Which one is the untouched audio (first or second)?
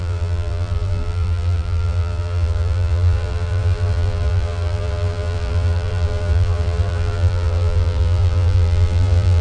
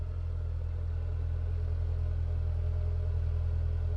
second